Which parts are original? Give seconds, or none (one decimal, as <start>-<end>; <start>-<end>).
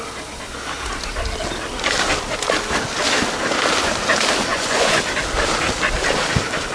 0.0-4.5; 5.0-6.7